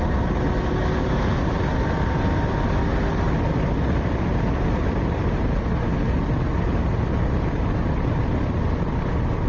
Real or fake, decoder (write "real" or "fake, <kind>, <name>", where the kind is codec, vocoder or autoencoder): real